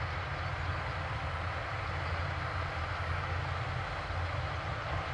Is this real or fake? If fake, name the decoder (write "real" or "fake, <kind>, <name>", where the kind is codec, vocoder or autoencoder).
real